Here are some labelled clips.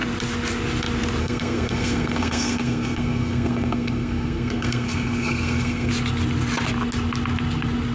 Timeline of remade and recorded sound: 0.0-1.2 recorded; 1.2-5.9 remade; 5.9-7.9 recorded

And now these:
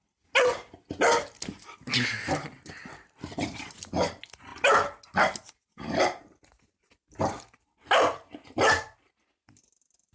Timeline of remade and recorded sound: 0.0-10.1 recorded

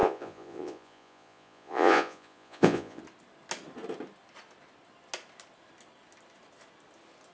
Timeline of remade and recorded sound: 0.0-3.0 remade; 3.0-7.3 recorded

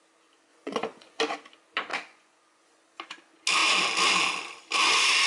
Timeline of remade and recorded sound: 0.0-0.5 recorded; 0.5-1.2 remade; 1.2-1.9 recorded; 1.9-2.8 remade; 2.8-5.3 recorded

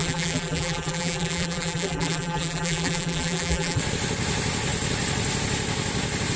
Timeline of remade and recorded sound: 0.0-3.8 remade; 3.8-6.4 recorded

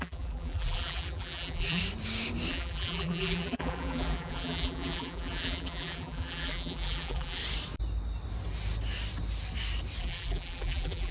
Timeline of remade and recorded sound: 0.0-1.8 remade; 1.8-2.5 recorded; 2.5-7.4 remade; 7.4-10.0 recorded; 10.0-11.1 remade

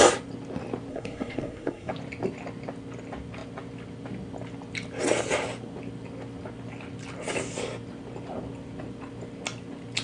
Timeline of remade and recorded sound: 0.0-0.9 recorded; 0.9-1.9 remade; 1.9-10.0 recorded